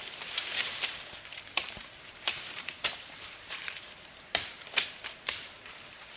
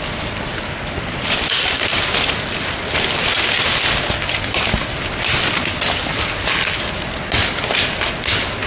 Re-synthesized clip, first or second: first